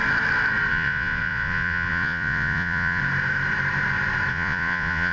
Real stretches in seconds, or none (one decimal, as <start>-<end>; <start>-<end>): 0.0-0.7; 3.0-4.3